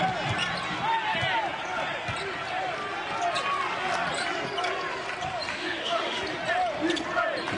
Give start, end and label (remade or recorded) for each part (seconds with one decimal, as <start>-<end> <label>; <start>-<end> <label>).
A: 0.0-5.5 recorded; 5.5-6.2 remade; 6.2-7.6 recorded